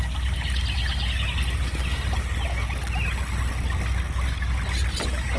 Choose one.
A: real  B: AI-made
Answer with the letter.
A